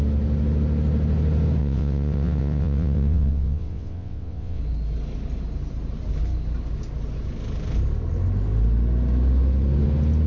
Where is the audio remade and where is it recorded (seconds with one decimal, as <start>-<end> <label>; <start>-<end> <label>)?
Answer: 0.0-1.6 recorded; 1.6-4.6 remade; 4.6-10.3 recorded